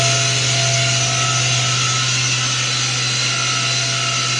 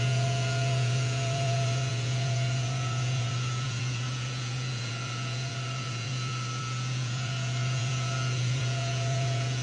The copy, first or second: second